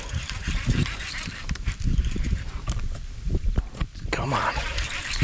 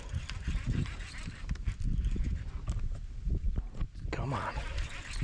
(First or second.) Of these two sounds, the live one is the second